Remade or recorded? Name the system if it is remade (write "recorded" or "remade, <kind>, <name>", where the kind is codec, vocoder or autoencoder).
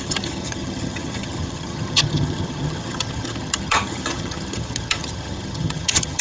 remade, vocoder, HiFi-GAN